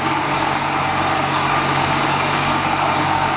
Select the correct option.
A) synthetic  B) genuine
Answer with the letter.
A